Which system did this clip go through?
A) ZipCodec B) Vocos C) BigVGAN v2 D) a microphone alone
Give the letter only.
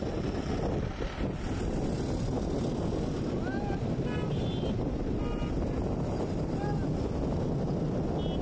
D